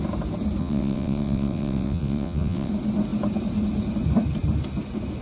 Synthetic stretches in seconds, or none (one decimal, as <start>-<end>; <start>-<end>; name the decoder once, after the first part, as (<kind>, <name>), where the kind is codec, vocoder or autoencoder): 0.6-2.7 (vocoder, WaveNeXt)